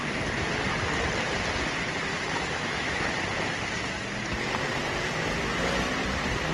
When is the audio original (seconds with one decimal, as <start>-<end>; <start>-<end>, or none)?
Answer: 0.0-2.1; 3.1-6.5